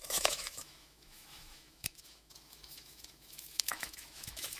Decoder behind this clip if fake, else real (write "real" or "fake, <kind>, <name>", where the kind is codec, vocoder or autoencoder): fake, autoencoder, DAC-VAE